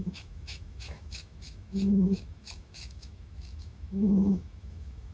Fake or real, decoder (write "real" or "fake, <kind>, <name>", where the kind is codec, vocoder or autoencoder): fake, autoencoder, DAC-VAE